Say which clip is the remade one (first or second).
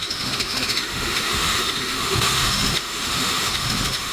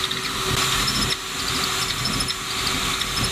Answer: first